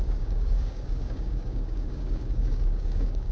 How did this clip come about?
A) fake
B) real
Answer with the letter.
A